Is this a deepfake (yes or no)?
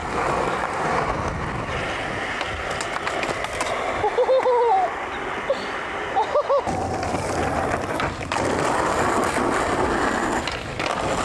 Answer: no